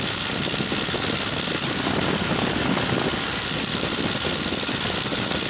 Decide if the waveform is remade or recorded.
recorded